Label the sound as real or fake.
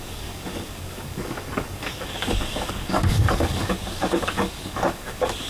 fake